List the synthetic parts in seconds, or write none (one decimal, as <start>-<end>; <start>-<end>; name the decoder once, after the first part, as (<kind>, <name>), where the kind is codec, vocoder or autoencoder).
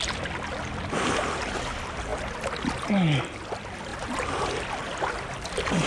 none